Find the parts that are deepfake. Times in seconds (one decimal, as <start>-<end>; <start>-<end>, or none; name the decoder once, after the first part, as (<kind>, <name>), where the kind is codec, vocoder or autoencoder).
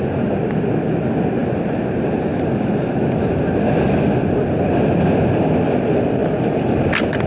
none